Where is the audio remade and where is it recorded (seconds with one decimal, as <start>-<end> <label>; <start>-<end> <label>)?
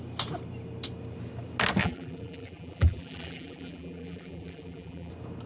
0.0-1.8 recorded; 1.8-5.1 remade; 5.1-5.5 recorded